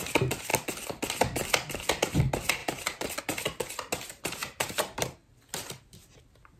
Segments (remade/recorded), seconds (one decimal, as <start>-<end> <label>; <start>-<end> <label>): 0.0-2.6 recorded; 2.6-3.2 remade; 3.2-4.4 recorded; 4.4-5.2 remade; 5.2-6.6 recorded